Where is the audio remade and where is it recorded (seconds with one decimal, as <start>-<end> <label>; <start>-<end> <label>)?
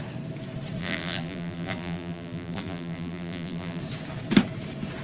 0.0-0.8 recorded; 0.8-3.8 remade; 3.8-5.0 recorded